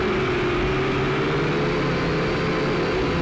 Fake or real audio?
real